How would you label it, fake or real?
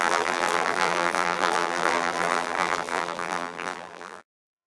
fake